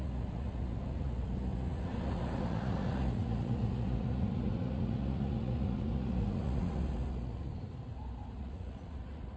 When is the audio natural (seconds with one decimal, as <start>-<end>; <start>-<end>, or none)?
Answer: 7.5-8.4